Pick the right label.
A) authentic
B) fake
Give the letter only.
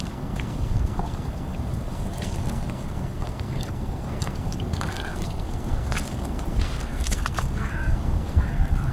B